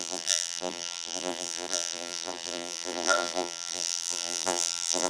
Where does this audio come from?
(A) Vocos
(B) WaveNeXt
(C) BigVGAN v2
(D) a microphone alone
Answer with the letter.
C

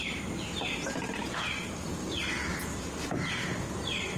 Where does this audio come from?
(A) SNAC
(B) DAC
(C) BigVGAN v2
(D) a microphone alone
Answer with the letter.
C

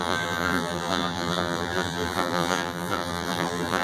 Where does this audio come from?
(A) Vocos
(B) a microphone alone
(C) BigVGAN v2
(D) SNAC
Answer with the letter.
C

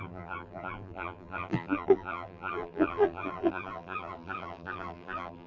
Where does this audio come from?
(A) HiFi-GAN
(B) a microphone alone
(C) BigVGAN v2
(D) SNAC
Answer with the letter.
C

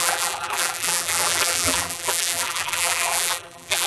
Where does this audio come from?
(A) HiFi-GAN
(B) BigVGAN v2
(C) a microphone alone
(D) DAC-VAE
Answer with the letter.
B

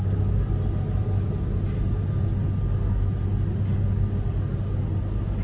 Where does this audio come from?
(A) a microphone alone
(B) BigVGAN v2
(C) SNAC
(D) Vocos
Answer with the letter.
A